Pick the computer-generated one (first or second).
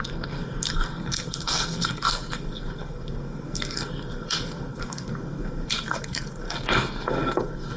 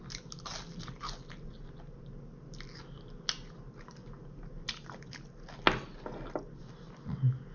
first